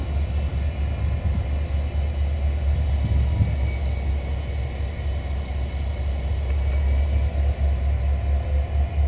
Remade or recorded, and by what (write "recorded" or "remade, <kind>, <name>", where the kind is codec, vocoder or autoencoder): recorded